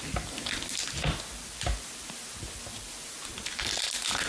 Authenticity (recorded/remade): recorded